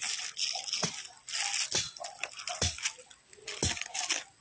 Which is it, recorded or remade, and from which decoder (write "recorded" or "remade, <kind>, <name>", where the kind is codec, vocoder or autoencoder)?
recorded